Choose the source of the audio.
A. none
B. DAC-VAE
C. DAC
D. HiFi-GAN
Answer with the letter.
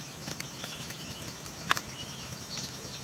B